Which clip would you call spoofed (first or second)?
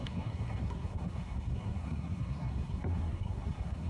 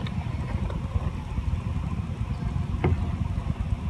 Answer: first